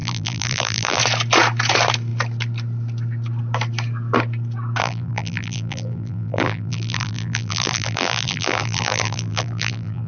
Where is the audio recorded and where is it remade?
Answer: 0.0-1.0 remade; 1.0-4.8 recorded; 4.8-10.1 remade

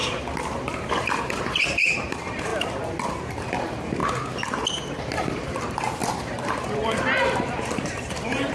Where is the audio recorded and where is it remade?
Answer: 0.0-0.9 recorded; 0.9-2.5 remade; 2.5-3.1 recorded; 3.1-4.0 remade; 4.0-5.3 recorded; 5.3-6.0 remade; 6.0-7.0 recorded; 7.0-8.5 remade